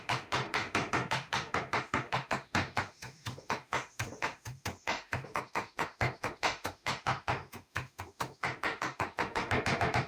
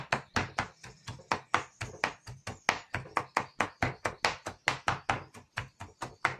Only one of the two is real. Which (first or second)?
second